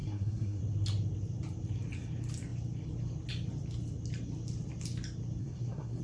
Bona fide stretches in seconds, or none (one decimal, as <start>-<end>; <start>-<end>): 0.6-5.4